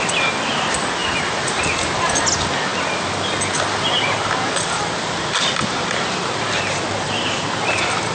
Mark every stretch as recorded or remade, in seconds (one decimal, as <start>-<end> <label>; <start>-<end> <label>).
0.0-1.0 recorded; 1.0-1.6 remade; 1.6-8.1 recorded